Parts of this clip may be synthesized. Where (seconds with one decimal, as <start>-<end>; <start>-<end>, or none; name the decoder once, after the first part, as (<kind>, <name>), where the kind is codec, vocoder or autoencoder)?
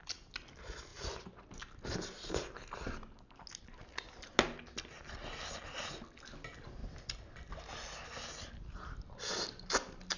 none